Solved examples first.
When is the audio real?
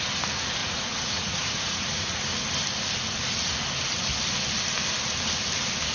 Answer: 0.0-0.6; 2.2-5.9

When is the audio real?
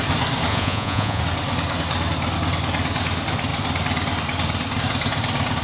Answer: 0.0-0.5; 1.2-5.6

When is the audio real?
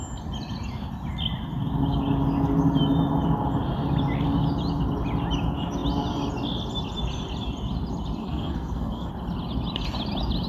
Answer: 0.0-8.2; 9.1-10.5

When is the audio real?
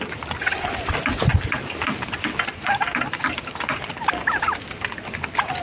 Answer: 0.0-5.6